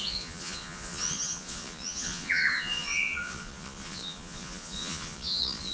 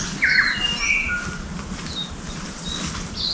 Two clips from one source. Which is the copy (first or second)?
first